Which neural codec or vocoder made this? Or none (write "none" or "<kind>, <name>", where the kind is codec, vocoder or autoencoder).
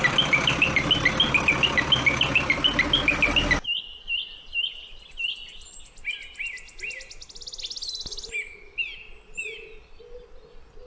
none